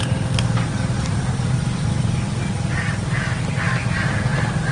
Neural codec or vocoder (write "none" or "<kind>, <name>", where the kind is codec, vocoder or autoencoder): none